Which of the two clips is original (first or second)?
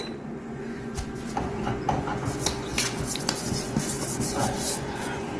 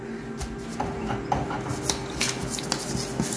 second